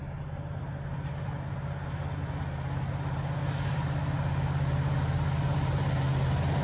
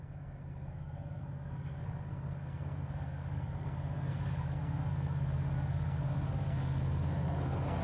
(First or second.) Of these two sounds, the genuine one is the first